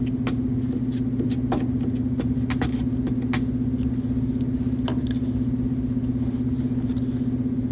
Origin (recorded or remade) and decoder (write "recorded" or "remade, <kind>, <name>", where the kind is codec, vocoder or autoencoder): recorded